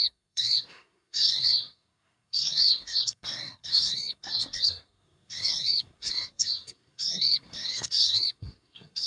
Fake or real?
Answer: fake